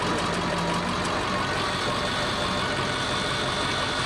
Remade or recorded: recorded